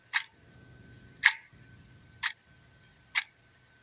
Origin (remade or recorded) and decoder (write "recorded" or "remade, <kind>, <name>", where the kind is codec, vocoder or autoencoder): recorded